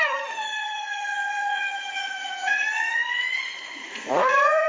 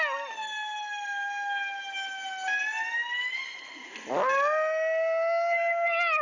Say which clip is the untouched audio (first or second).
second